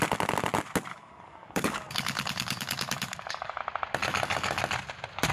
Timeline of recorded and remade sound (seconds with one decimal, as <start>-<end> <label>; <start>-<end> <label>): 0.0-0.9 recorded; 0.9-3.6 remade; 3.6-4.0 recorded; 4.0-4.6 remade; 4.6-5.3 recorded